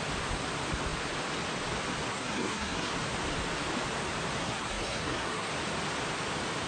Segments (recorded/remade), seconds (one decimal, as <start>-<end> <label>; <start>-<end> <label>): 0.0-2.1 recorded; 2.1-2.9 remade; 2.9-4.4 recorded; 4.4-5.5 remade; 5.5-6.7 recorded